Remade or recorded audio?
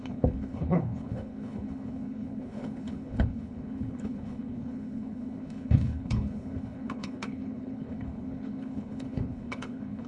remade